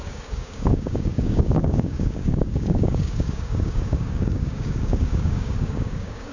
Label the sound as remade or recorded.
remade